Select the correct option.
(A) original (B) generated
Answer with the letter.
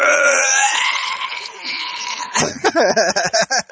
B